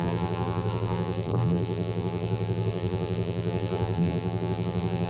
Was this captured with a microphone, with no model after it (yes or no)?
no